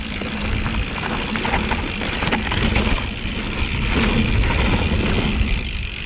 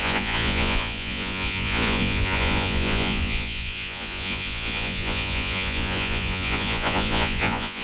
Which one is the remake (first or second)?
second